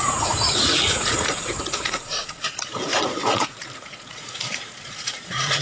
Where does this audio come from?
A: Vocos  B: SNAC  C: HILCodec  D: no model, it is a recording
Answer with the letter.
A